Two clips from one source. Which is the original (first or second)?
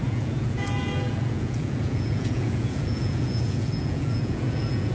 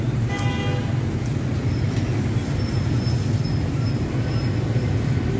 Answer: second